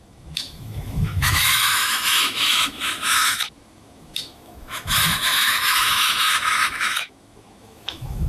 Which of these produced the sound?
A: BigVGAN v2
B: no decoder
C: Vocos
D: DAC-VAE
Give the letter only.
D